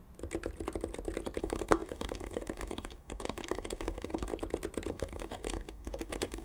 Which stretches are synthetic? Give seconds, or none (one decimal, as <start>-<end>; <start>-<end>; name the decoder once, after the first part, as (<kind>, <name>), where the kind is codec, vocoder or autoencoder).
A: 1.4-4.3 (codec, DAC); 4.9-6.4